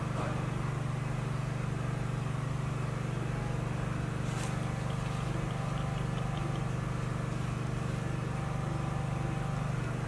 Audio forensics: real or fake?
real